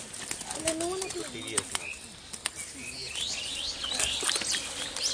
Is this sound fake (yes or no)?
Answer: no